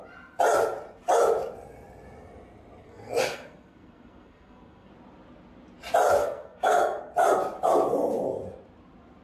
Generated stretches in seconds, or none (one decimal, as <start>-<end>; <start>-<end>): 2.8-4.9; 6.2-7.0